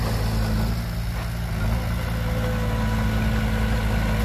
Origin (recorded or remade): recorded